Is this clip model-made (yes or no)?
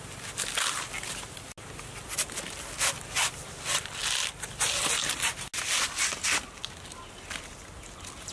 no